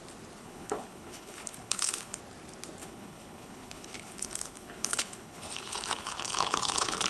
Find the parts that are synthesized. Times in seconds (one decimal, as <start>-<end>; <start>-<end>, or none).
0.4-2.2; 2.8-7.1